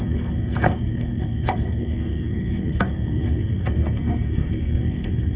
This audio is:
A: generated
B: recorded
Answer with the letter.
A